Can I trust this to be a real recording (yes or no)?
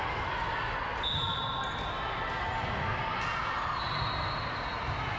yes